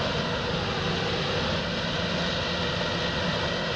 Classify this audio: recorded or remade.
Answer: recorded